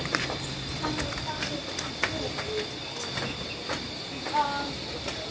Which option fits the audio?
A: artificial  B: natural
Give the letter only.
B